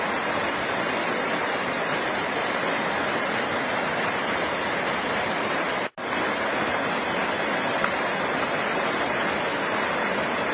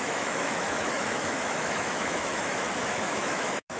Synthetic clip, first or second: second